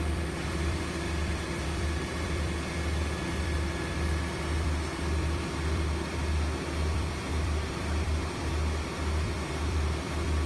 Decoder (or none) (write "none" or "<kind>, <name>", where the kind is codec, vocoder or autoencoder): vocoder, BigVGAN v2